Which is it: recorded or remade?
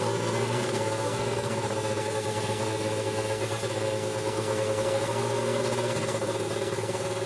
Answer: remade